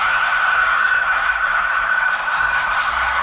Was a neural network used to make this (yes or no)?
yes